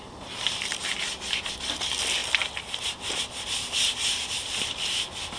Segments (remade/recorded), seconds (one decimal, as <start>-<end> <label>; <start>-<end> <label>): 0.0-5.4 recorded